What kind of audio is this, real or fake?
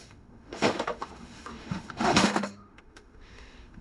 fake